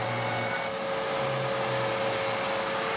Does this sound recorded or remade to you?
recorded